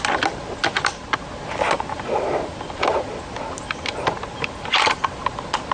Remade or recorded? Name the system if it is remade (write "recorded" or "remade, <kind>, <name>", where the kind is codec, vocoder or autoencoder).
recorded